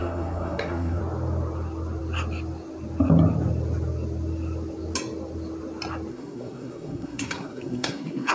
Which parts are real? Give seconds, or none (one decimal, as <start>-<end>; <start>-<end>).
1.0-6.1